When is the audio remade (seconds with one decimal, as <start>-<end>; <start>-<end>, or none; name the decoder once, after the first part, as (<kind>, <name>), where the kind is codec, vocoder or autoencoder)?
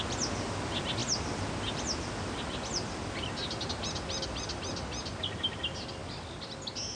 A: none